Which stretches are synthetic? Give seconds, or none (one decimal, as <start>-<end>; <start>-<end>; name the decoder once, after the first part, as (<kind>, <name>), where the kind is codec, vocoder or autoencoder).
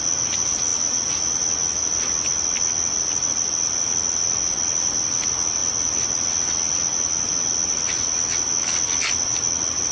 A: none